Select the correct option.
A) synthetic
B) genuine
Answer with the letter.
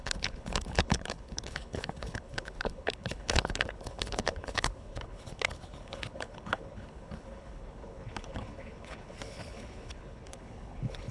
A